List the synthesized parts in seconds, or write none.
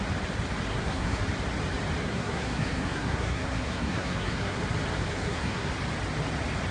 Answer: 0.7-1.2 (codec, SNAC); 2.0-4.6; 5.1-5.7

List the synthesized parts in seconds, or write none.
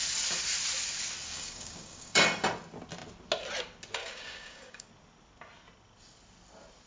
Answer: 1.3-2.2 (codec, DAC); 4.0-4.9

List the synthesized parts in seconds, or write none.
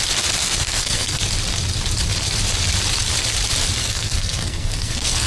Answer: 0.4-1.2 (codec, SNAC); 3.8-5.3